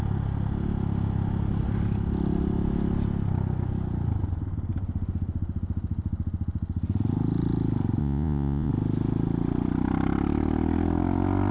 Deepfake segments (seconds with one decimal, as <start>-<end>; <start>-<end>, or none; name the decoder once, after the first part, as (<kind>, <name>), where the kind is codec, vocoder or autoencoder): 8.0-8.7 (vocoder, Vocos)